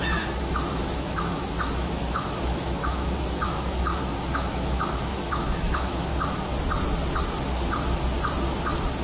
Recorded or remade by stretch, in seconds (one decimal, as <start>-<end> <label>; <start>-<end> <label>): 0.0-6.1 remade; 6.1-9.0 recorded